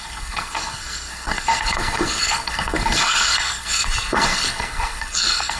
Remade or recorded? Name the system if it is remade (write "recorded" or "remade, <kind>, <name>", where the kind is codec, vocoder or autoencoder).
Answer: remade, codec, SNAC